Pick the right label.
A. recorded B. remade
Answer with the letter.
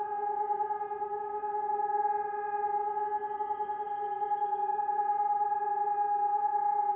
A